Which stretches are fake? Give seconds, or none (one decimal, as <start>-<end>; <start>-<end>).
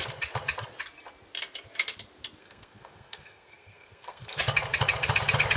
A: 2.4-4.4